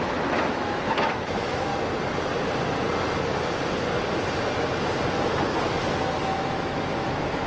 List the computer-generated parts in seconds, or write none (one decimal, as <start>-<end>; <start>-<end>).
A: 0.0-1.7; 6.2-7.5